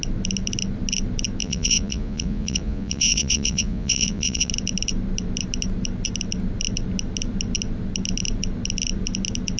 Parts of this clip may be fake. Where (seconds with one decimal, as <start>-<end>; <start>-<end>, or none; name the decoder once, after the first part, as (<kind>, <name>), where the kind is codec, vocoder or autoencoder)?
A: 1.4-4.5 (vocoder, Vocos)